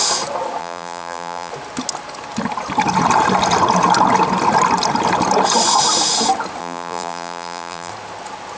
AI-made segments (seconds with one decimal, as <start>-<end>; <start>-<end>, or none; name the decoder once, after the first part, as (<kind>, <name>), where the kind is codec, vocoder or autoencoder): 0.6-1.5 (vocoder, BigVGAN v2); 6.6-7.9